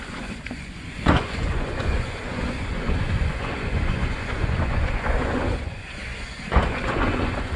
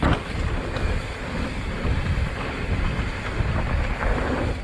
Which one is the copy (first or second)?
first